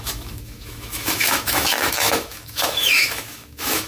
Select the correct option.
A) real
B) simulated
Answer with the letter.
B